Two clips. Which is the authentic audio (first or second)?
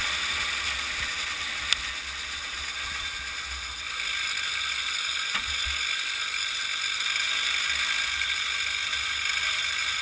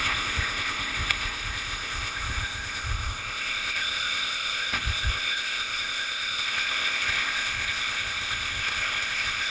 first